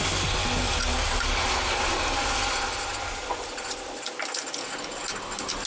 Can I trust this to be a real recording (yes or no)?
yes